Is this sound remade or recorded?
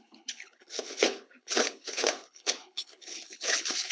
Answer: remade